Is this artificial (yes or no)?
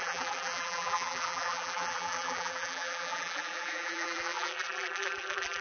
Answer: yes